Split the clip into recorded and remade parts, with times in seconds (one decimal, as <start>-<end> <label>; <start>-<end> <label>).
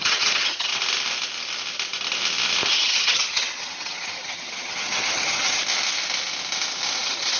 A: 0.0-0.7 remade; 0.7-2.7 recorded; 2.7-5.6 remade; 5.6-7.0 recorded; 7.0-7.4 remade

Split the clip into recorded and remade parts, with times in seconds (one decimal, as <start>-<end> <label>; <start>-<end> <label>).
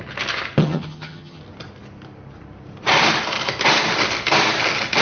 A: 0.0-0.6 recorded; 0.6-1.4 remade; 1.4-5.0 recorded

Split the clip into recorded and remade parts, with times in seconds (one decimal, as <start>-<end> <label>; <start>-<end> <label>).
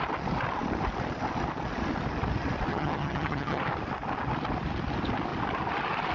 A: 0.0-2.7 recorded; 2.7-3.6 remade; 3.6-6.1 recorded